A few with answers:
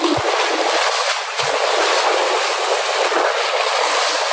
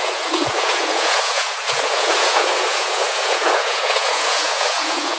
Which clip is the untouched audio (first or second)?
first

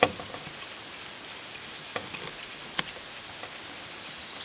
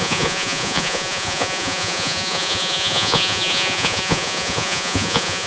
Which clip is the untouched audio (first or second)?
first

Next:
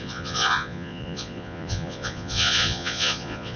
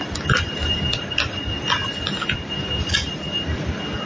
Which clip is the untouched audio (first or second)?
second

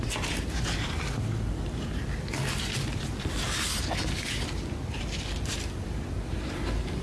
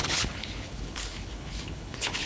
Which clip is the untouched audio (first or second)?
first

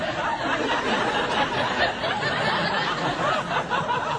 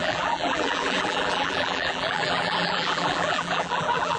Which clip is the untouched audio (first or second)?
first